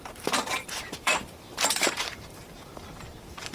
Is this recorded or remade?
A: remade